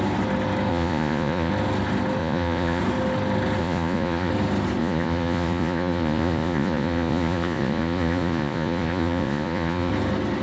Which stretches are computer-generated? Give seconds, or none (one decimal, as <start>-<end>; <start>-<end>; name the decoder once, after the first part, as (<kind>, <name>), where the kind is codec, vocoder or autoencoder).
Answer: 0.7-1.5 (vocoder, Vocos); 2.2-2.8; 3.6-4.3; 4.8-9.9